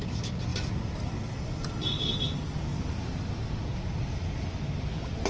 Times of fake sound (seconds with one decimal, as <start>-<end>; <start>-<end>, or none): 2.7-3.5